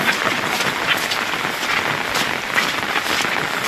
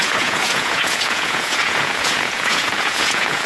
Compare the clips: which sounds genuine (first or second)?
first